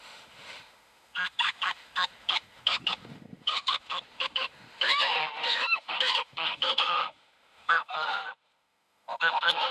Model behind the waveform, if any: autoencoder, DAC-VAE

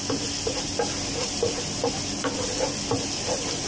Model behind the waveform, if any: none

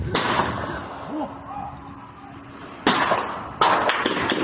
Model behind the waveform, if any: none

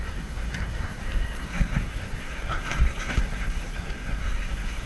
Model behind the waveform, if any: codec, SNAC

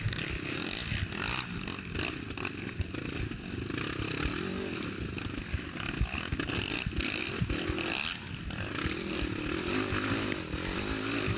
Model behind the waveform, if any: none